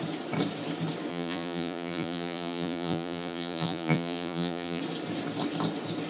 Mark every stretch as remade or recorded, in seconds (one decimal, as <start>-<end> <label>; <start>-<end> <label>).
0.0-1.1 recorded; 1.1-4.8 remade; 4.8-6.1 recorded